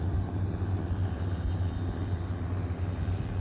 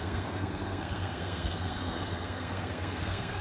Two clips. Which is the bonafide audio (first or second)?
first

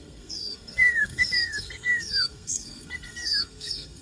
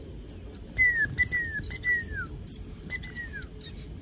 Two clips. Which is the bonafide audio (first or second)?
second